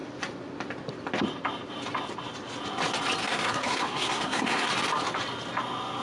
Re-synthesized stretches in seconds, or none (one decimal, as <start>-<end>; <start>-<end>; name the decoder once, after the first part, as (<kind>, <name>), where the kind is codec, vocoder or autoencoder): 3.2-4.7 (codec, SNAC)